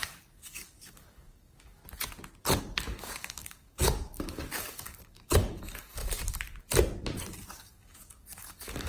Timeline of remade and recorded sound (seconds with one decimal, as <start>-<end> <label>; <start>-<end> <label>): 0.0-1.8 remade; 1.8-2.6 recorded; 2.6-6.0 remade; 6.0-7.6 recorded; 7.6-8.9 remade